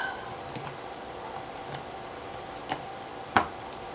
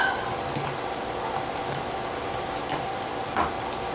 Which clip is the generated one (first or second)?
first